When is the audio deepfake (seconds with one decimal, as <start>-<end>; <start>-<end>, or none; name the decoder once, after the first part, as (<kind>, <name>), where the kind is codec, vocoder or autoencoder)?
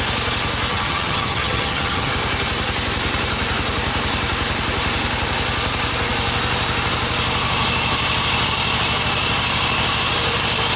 0.7-2.1 (vocoder, HiFi-GAN)